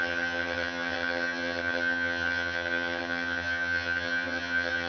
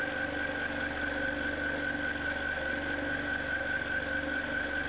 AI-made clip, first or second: first